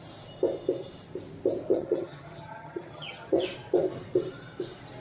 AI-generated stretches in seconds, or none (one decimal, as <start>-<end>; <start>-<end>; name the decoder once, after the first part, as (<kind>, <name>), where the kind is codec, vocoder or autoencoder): 1.7-3.4 (vocoder, HiFi-GAN)